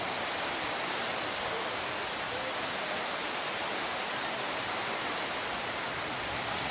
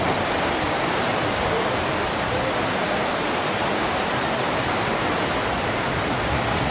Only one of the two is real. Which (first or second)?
first